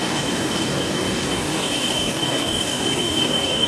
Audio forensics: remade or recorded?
remade